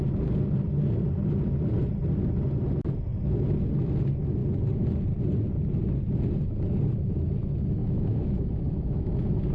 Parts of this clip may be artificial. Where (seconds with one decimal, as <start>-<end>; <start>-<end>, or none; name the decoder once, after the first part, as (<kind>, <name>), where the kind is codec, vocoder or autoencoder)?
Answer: 7.8-9.1 (autoencoder, DAC-VAE)